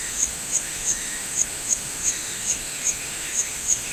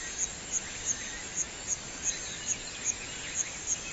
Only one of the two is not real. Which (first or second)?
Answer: first